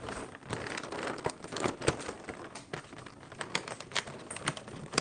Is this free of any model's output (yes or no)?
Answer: yes